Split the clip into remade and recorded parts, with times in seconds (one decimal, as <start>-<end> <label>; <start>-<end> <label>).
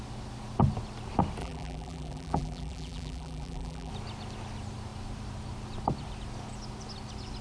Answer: 0.0-1.4 recorded; 1.4-3.9 remade; 3.9-7.4 recorded